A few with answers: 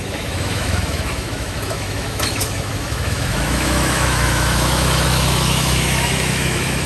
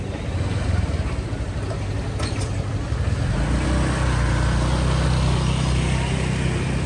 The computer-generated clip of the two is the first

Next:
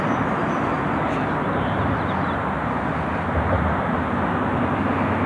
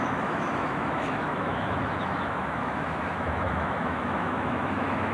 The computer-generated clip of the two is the second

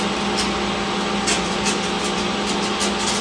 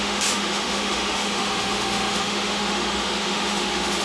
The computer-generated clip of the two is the second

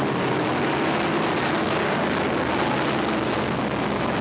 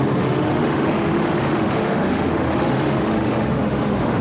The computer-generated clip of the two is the second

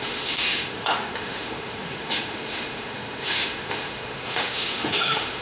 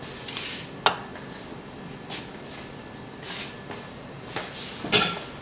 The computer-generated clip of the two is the first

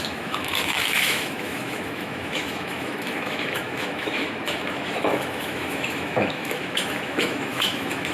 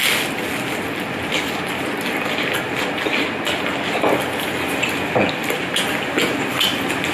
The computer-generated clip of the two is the first